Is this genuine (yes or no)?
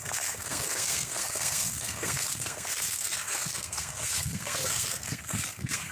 no